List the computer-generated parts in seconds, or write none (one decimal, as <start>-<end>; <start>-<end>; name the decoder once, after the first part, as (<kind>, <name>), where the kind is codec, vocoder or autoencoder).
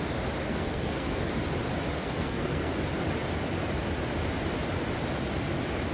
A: 0.4-1.2 (codec, SNAC); 2.0-2.7